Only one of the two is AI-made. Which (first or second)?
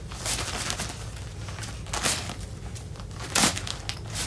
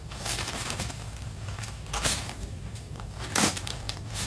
second